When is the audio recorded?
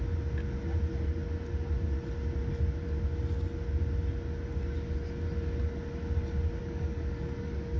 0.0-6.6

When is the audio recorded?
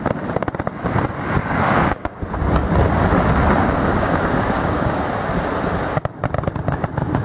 0.0-1.4; 2.2-3.6; 5.0-7.2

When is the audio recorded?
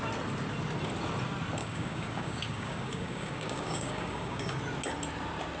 0.0-1.6; 4.6-5.6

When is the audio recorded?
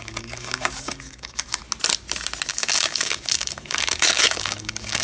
1.6-2.5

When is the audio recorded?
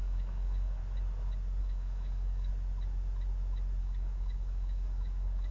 0.8-1.6; 2.5-3.8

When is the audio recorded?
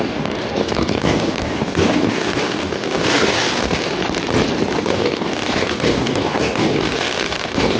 4.0-4.8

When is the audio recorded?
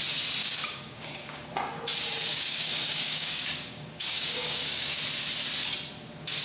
0.0-0.4; 1.4-2.3; 5.0-6.4